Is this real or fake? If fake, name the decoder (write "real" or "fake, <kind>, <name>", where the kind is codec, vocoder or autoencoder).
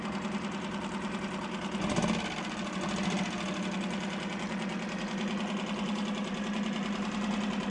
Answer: real